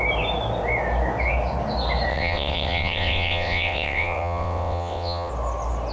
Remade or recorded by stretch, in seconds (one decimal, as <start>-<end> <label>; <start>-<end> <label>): 0.0-2.1 recorded; 2.1-5.3 remade; 5.3-5.9 recorded